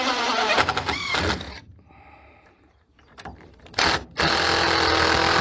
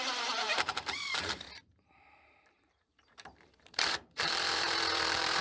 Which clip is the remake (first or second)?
second